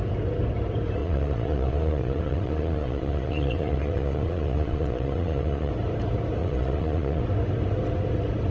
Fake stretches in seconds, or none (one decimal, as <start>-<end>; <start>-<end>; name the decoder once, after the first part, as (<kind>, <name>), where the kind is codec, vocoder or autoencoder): 1.0-5.7 (vocoder, Vocos); 6.4-7.2